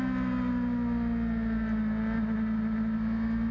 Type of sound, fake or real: real